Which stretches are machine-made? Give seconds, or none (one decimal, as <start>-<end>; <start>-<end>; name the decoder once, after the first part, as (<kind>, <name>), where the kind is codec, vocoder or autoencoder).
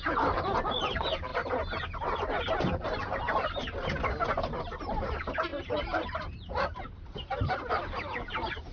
0.0-1.3 (vocoder, BigVGAN v2); 2.6-3.6; 4.5-8.7